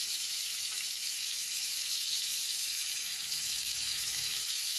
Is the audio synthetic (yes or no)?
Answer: yes